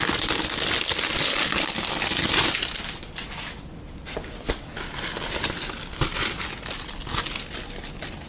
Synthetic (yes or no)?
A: no